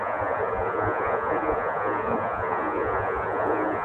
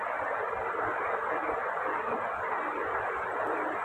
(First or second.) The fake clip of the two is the first